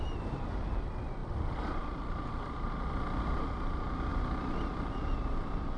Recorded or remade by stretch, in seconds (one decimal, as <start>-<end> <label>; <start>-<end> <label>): 0.0-5.8 recorded